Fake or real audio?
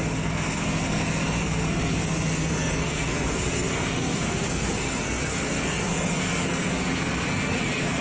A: fake